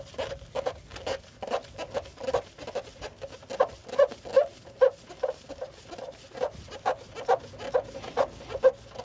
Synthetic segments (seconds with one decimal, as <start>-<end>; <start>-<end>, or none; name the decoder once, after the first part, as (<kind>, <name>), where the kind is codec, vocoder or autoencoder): none